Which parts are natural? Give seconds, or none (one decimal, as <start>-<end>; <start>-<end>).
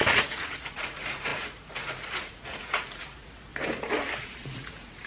3.5-4.2